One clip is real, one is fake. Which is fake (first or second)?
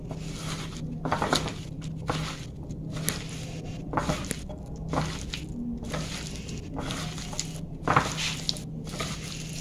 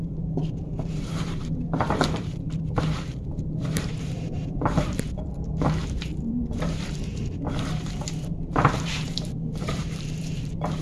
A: second